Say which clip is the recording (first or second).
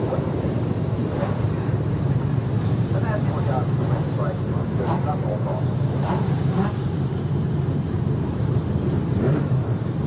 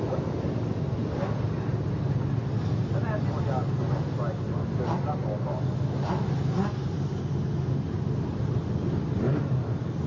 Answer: second